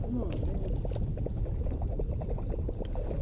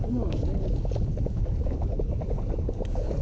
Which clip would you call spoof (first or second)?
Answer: second